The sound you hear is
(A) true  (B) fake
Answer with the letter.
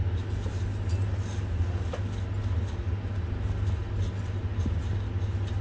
A